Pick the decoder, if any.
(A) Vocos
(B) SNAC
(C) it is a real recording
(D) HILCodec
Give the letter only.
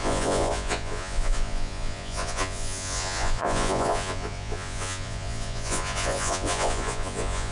A